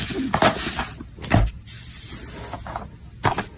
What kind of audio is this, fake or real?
real